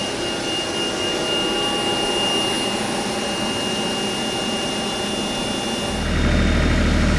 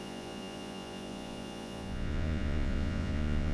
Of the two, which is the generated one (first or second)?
second